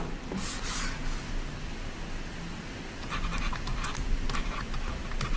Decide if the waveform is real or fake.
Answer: real